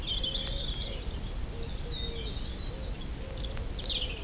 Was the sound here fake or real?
real